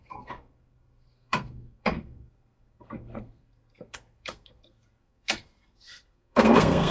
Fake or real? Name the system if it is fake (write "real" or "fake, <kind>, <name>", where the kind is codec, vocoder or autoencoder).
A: fake, codec, SNAC